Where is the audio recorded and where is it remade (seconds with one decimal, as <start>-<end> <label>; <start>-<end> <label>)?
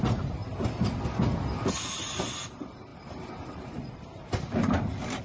0.0-0.4 remade; 0.4-2.5 recorded; 2.5-2.9 remade; 2.9-3.5 recorded; 3.5-5.2 remade